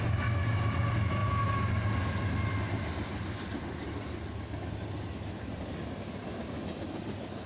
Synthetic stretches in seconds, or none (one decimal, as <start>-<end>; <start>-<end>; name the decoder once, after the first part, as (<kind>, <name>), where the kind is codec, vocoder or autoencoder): none